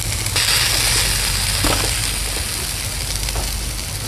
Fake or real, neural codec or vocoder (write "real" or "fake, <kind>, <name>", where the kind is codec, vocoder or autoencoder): real